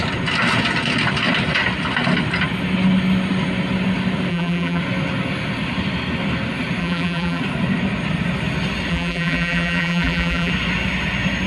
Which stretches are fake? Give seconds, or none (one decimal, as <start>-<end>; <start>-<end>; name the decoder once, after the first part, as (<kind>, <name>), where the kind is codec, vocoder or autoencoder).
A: 4.3-4.8 (vocoder, BigVGAN v2); 6.8-7.4; 8.9-10.5